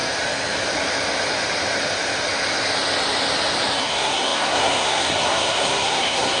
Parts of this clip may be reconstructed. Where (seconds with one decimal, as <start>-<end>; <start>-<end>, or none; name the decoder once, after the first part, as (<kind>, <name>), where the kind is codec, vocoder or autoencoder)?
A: 3.8-6.4 (codec, SNAC)